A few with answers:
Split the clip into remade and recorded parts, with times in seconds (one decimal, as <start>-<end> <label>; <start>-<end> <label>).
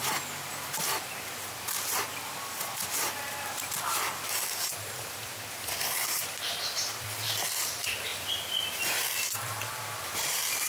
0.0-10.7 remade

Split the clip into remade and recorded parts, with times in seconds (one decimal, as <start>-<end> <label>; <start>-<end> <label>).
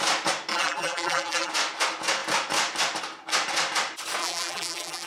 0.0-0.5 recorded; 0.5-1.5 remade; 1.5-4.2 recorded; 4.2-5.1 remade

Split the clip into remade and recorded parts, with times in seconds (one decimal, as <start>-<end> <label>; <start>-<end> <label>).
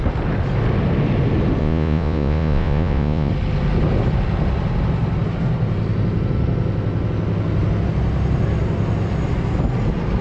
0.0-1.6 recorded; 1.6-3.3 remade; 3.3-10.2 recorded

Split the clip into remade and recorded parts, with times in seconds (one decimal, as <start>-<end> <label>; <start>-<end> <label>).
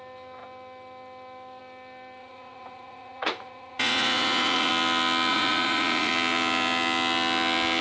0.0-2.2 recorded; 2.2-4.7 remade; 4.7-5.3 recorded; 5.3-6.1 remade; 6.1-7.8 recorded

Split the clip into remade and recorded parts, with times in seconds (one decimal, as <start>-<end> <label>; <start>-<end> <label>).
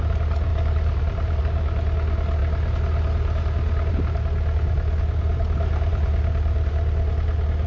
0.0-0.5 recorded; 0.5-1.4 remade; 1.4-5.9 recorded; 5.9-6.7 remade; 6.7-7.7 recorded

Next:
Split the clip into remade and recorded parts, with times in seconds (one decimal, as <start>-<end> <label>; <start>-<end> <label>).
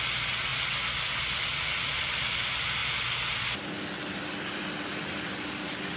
0.0-6.0 recorded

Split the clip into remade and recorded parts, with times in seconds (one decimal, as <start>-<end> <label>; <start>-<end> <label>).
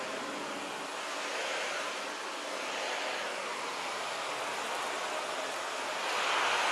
0.0-1.4 recorded; 1.4-3.5 remade; 3.5-6.7 recorded